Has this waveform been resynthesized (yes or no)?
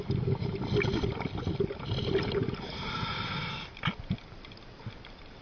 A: no